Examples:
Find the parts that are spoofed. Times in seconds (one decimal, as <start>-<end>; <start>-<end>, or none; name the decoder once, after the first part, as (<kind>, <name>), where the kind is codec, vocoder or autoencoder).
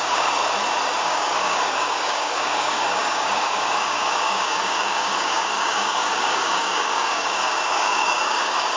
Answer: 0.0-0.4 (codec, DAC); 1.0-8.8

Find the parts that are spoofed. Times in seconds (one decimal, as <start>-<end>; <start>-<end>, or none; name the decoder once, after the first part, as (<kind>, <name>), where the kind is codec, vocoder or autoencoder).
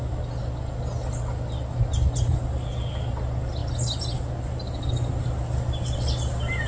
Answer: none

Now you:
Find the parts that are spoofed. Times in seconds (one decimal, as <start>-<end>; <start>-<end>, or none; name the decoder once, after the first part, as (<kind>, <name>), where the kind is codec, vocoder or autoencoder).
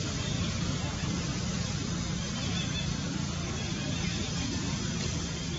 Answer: none